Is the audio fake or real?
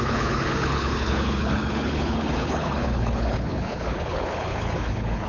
fake